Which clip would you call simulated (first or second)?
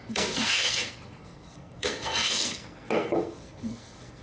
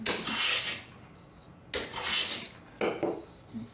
first